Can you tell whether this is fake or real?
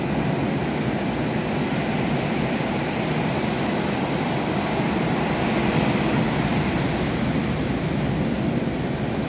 real